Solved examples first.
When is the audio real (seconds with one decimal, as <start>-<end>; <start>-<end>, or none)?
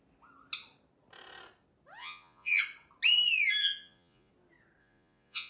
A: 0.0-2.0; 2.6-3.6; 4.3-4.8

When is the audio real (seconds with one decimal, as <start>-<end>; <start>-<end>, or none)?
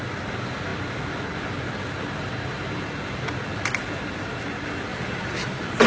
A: 0.0-4.9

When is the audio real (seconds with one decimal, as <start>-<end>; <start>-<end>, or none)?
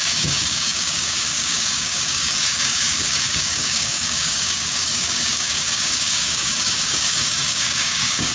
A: none